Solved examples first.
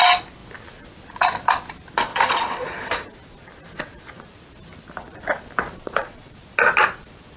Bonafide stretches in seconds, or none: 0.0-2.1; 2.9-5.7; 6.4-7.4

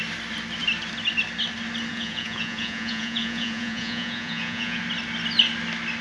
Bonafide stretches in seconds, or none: 0.0-1.9; 4.8-6.0